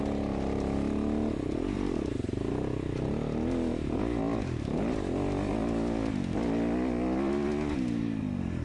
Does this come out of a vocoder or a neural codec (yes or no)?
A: no